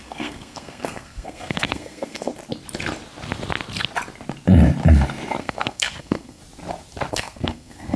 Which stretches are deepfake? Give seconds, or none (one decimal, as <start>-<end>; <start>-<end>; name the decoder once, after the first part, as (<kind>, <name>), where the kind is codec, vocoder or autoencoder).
0.0-2.3 (codec, SNAC); 5.4-6.4; 7.1-8.0